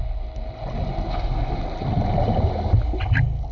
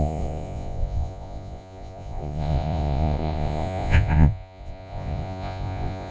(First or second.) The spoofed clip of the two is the second